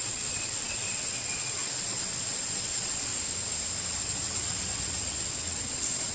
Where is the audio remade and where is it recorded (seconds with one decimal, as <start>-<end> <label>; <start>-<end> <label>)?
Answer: 0.0-3.1 remade; 3.1-3.9 recorded; 3.9-6.1 remade